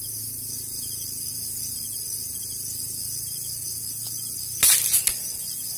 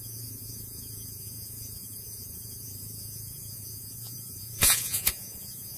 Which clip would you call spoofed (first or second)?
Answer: second